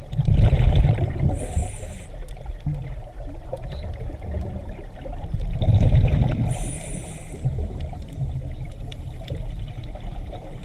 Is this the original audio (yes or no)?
no